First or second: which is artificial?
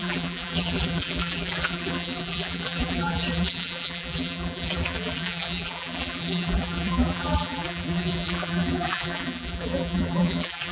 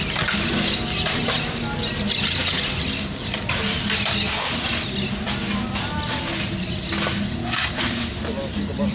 first